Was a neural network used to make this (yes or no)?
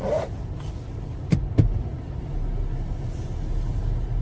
no